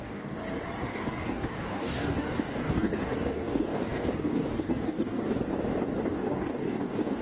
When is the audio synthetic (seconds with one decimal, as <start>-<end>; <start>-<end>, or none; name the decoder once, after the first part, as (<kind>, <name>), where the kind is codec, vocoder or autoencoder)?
0.0-0.4 (codec, DAC); 0.9-5.3; 6.1-7.2